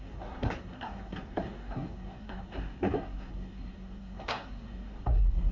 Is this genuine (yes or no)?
no